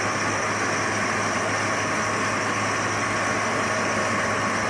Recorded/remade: recorded